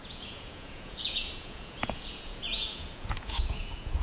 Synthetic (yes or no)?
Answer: yes